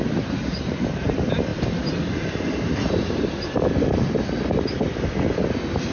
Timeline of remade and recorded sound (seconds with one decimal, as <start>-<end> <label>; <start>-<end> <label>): 0.0-5.9 recorded